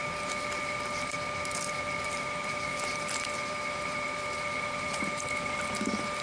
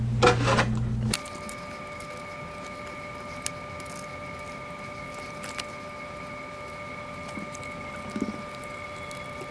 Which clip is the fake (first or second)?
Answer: first